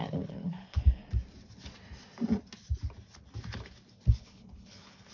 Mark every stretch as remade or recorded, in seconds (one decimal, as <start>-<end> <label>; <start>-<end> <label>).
0.0-1.0 remade; 1.0-4.1 recorded; 4.1-5.1 remade